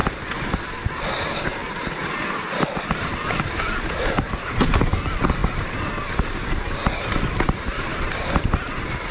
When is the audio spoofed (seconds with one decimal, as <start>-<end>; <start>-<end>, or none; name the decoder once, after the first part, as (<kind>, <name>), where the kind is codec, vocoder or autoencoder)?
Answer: none